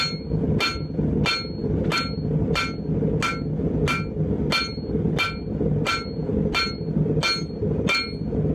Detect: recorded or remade recorded